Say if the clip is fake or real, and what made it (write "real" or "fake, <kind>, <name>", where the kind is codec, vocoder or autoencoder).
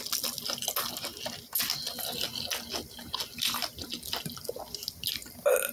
real